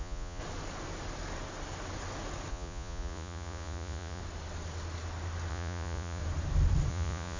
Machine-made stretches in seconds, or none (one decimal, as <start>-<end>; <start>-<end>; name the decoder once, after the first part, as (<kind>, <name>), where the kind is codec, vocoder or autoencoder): 0.0-0.4 (vocoder, Vocos); 2.5-4.2; 5.5-6.2; 6.9-7.4